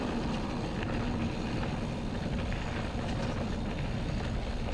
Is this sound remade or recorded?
recorded